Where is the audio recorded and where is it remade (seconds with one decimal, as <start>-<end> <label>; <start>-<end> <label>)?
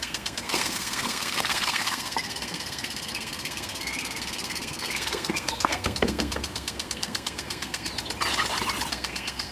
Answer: 0.0-7.9 remade; 7.9-8.9 recorded; 8.9-9.5 remade